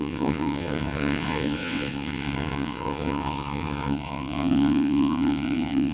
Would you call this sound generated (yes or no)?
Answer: yes